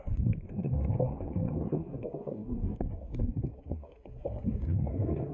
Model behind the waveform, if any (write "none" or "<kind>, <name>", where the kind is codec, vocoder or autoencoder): codec, SNAC